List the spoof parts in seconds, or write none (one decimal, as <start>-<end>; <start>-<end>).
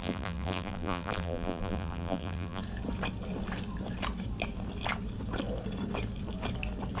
0.0-2.6